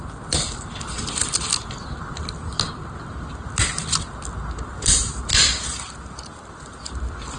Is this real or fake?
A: real